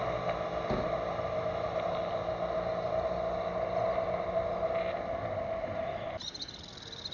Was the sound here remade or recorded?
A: recorded